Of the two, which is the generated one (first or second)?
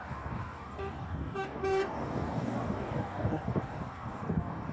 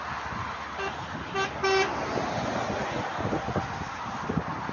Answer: first